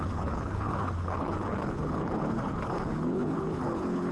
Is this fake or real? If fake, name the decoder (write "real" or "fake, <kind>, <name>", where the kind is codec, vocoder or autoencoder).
fake, codec, HILCodec